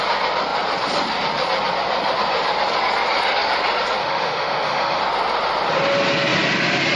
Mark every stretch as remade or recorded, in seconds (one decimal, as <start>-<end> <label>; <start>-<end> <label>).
0.0-4.0 recorded; 4.0-5.0 remade; 5.0-7.0 recorded

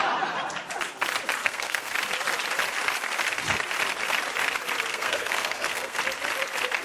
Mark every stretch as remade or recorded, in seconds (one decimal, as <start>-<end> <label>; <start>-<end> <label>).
0.0-1.4 recorded; 1.4-1.9 remade; 1.9-4.9 recorded; 4.9-6.0 remade; 6.0-6.8 recorded

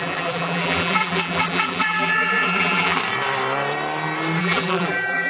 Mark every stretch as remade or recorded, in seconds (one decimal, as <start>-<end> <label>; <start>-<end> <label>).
0.0-3.0 remade; 3.0-4.4 recorded; 4.4-5.3 remade

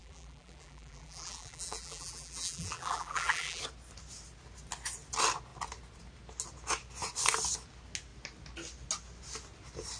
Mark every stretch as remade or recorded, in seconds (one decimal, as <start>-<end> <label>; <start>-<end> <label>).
0.0-3.6 remade; 3.6-10.0 recorded

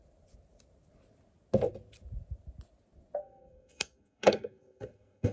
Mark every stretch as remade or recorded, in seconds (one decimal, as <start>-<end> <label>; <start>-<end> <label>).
0.0-3.2 recorded; 3.2-5.3 remade

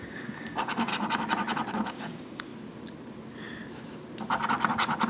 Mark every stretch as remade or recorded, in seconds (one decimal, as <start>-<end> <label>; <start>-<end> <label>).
0.0-0.9 remade; 0.9-1.9 recorded; 1.9-2.5 remade; 2.5-5.1 recorded

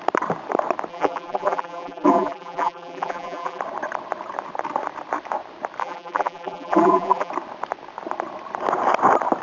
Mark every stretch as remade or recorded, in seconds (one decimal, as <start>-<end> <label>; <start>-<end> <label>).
0.0-0.9 recorded; 0.9-3.6 remade; 3.6-5.8 recorded; 5.8-7.3 remade; 7.3-9.4 recorded